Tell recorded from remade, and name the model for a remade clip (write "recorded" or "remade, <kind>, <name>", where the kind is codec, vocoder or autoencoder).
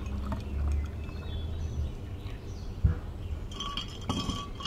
recorded